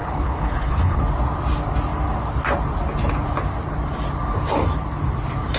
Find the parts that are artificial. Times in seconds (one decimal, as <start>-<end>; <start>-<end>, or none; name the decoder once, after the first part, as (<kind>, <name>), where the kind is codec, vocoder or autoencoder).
0.0-1.0 (codec, HILCodec)